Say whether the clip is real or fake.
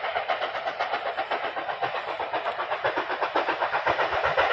real